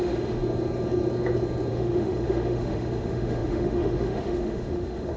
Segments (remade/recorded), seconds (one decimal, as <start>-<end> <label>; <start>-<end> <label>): 0.0-0.4 remade; 0.4-1.7 recorded; 1.7-5.2 remade